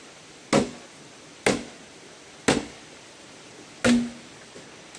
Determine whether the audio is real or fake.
real